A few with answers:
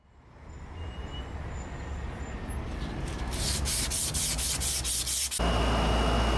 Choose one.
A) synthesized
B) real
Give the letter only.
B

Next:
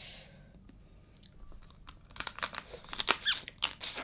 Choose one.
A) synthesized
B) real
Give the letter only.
B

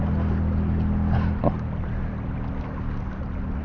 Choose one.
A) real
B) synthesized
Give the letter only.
A